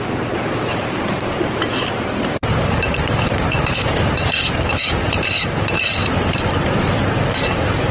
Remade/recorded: remade